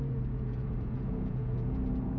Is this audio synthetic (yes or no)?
yes